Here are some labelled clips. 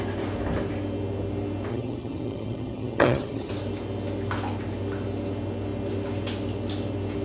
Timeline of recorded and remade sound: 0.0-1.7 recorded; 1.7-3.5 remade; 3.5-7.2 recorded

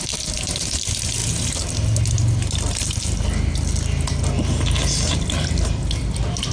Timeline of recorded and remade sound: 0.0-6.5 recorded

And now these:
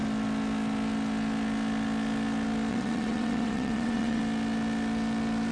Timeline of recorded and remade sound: 0.0-2.7 recorded; 2.7-4.2 remade; 4.2-5.5 recorded

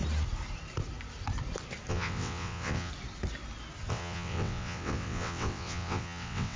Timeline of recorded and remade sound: 0.0-1.9 recorded; 1.9-2.9 remade; 2.9-3.9 recorded; 3.9-6.6 remade

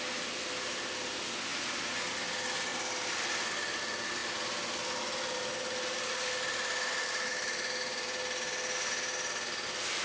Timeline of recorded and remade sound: 0.0-10.0 recorded

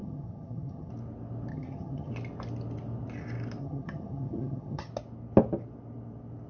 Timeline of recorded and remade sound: 0.0-0.9 remade; 0.9-1.5 recorded; 1.5-2.1 remade; 2.1-3.6 recorded; 3.6-4.9 remade; 4.9-6.5 recorded

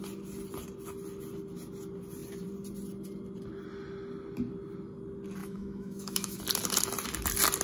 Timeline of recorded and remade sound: 0.0-5.4 recorded; 5.4-6.4 remade; 6.4-7.6 recorded

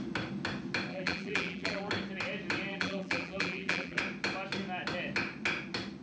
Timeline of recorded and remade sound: 0.0-0.9 recorded; 0.9-1.9 remade; 1.9-2.7 recorded; 2.7-4.0 remade; 4.0-6.0 recorded